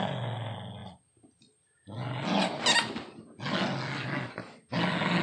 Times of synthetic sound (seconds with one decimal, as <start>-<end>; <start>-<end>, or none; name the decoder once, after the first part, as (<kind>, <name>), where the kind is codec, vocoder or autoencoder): none